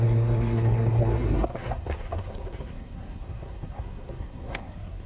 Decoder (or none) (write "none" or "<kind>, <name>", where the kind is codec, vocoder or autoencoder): codec, SNAC